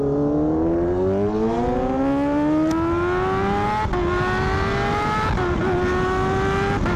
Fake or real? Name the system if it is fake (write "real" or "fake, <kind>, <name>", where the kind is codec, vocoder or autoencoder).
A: real